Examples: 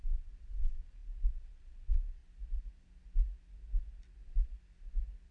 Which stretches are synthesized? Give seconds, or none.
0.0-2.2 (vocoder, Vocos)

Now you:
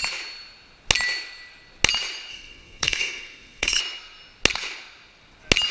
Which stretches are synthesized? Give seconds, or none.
2.3-3.8 (codec, SNAC)

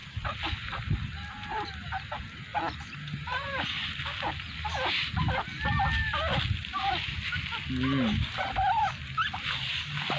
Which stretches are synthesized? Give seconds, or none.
none

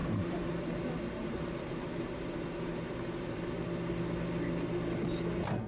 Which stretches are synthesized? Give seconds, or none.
0.0-3.4 (vocoder, BigVGAN v2)

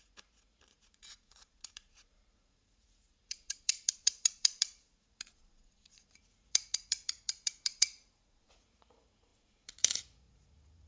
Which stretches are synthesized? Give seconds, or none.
0.0-10.9 (vocoder, Vocos)

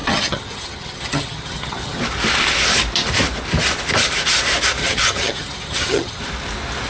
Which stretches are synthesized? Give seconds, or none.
0.0-2.0 (vocoder, HiFi-GAN); 4.8-6.2